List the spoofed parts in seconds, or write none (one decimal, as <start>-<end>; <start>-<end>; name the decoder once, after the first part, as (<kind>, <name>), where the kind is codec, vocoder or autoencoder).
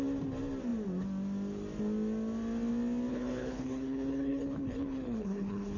3.1-5.8 (codec, HILCodec)